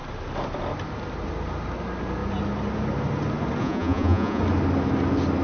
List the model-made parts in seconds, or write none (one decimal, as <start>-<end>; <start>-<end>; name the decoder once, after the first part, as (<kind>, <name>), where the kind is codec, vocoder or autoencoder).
3.6-4.4 (vocoder, Vocos)